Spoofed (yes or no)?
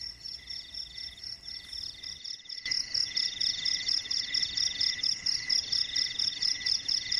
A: no